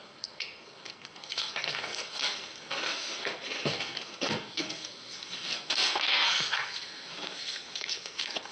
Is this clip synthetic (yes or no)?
yes